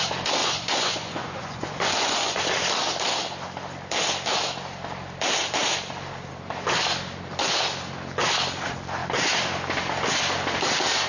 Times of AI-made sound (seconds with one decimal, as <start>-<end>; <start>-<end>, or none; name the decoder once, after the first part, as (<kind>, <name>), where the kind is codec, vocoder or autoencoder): 0.4-2.4 (vocoder, Vocos)